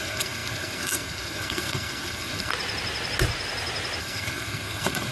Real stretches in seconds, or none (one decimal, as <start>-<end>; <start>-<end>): 2.5-4.0